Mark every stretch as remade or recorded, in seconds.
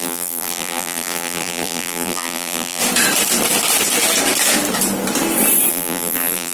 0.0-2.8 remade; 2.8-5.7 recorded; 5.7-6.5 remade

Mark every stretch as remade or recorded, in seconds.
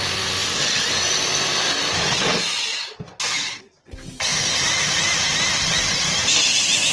0.0-0.4 recorded; 0.4-1.7 remade; 1.7-6.9 recorded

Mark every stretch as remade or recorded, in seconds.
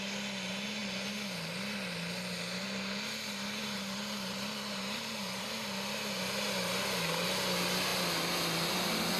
0.0-3.6 recorded; 3.6-5.5 remade; 5.5-9.2 recorded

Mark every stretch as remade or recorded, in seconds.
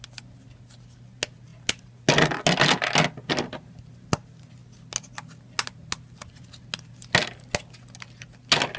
0.0-8.8 recorded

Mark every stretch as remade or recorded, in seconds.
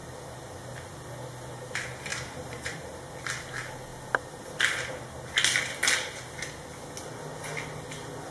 0.0-2.1 recorded; 2.1-3.0 remade; 3.0-8.3 recorded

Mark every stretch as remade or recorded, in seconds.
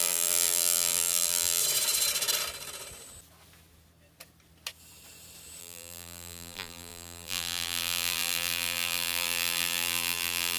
0.0-1.6 remade; 1.6-5.6 recorded; 5.6-10.6 remade